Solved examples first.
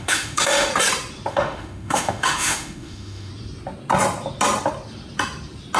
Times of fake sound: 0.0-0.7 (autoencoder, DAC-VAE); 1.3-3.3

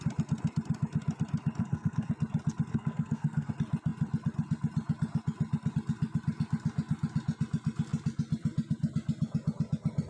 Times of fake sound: 1.6-2.1 (codec, SNAC); 2.7-3.5

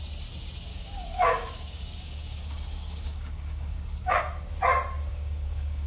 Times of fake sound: 0.7-4.2 (codec, DAC); 5.1-5.9